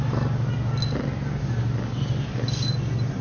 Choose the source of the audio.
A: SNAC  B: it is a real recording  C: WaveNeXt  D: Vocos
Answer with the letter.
B